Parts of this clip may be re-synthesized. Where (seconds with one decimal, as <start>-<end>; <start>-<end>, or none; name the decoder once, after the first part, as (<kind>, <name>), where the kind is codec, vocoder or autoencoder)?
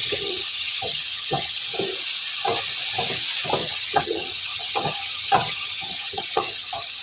0.0-1.6 (vocoder, HiFi-GAN); 3.6-7.0